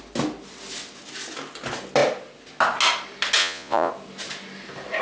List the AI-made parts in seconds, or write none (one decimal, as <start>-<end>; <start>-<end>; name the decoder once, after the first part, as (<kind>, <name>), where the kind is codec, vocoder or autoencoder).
3.4-3.9 (vocoder, Vocos)